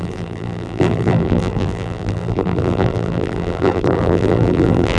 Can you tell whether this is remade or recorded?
remade